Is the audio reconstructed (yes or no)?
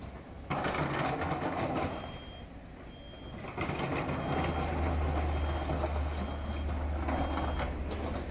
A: no